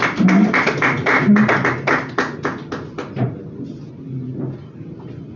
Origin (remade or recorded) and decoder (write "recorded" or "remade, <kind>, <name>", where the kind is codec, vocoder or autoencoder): recorded